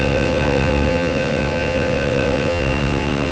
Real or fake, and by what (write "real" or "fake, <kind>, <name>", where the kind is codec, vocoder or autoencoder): fake, vocoder, WaveNeXt